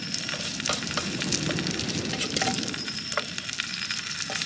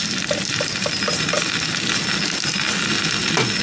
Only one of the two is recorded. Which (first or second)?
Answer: second